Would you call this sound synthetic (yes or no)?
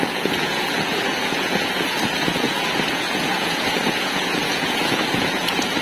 yes